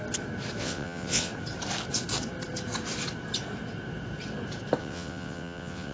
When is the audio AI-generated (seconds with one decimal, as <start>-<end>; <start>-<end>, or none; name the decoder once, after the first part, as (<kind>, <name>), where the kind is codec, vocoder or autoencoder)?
0.6-1.3 (vocoder, WaveNeXt); 4.8-5.9

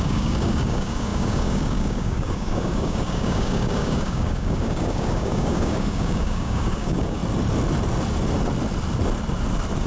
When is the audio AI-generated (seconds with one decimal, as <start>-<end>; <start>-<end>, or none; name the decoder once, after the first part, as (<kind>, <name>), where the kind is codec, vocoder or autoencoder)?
0.0-7.2 (codec, DAC)

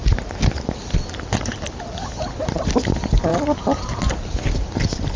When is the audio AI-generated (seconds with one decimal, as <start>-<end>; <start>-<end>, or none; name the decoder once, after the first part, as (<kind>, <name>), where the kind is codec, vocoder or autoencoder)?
none